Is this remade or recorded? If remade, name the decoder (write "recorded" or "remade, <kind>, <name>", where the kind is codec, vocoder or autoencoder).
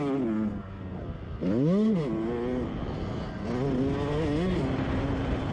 recorded